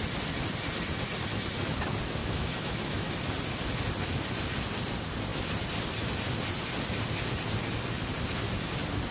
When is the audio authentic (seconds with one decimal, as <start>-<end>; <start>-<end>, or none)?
0.0-2.2; 3.1-9.1